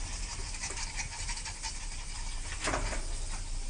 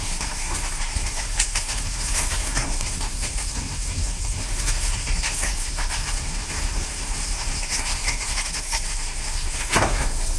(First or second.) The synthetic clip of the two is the second